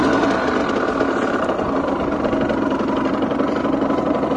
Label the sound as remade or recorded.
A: recorded